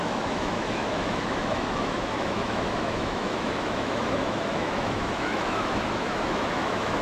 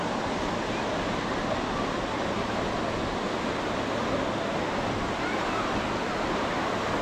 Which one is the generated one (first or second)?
first